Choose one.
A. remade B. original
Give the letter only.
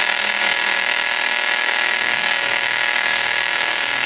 A